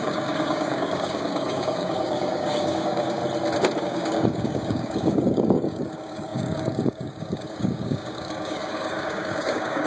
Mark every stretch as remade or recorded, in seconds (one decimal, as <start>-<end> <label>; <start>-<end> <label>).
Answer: 0.0-3.2 remade; 3.2-3.8 recorded; 3.8-9.9 remade